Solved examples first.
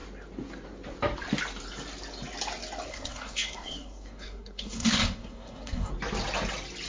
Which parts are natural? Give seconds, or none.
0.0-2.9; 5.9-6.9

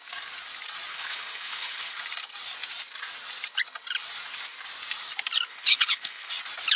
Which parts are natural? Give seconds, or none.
0.0-0.9; 2.0-5.5; 6.3-6.8

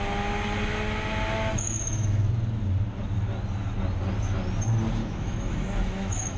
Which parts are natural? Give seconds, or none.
0.0-1.5; 2.3-5.0

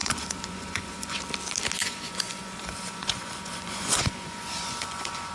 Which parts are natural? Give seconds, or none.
1.2-1.8

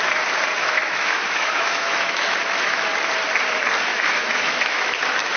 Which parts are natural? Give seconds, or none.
0.0-0.6; 2.9-3.9; 5.0-5.4

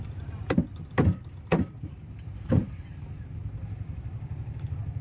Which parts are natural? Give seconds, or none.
0.0-1.5; 3.0-5.0